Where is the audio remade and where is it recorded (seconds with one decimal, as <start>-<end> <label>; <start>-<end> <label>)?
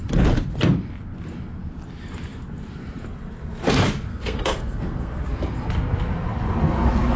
0.0-4.1 recorded; 4.1-5.2 remade; 5.2-7.2 recorded